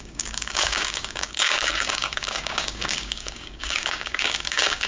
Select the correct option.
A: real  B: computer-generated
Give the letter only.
B